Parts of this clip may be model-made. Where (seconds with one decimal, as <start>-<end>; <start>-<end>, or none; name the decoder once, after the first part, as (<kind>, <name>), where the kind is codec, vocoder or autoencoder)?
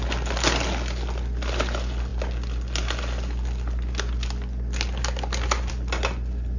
none